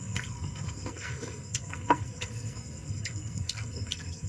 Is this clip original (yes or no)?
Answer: no